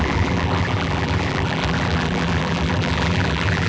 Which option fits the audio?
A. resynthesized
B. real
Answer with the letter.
A